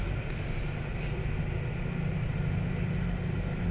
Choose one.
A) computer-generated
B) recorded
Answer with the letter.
B